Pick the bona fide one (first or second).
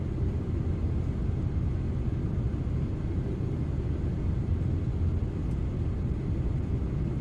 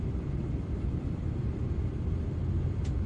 first